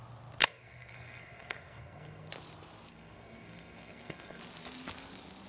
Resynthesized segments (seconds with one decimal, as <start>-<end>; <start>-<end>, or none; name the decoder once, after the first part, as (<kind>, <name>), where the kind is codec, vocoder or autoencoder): 0.4-2.3 (codec, SNAC); 2.9-4.4